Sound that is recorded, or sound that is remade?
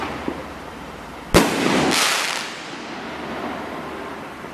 recorded